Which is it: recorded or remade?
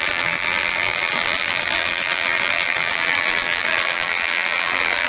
remade